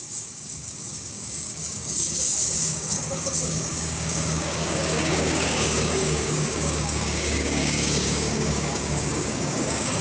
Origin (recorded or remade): remade